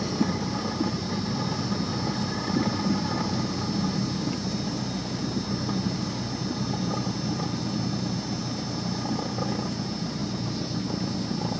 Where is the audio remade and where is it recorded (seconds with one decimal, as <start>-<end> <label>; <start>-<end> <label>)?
0.0-11.6 recorded